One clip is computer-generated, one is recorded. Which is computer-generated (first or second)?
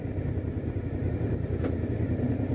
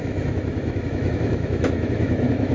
second